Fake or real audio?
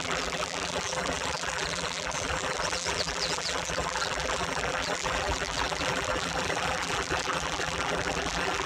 fake